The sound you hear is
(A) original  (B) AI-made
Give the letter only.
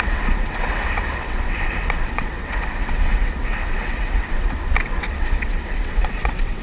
B